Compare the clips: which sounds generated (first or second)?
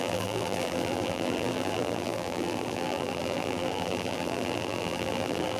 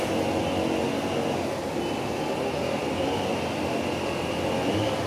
first